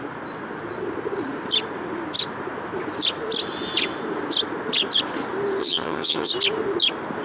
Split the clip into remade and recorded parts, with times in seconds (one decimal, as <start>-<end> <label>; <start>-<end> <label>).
0.0-5.6 recorded; 5.6-6.3 remade; 6.3-7.2 recorded